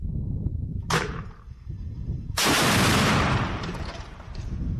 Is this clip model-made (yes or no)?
yes